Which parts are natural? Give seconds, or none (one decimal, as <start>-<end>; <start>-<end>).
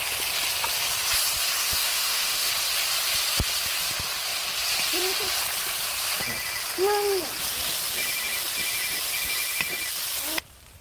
0.0-1.6; 2.5-10.8